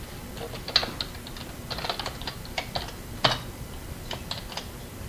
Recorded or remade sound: recorded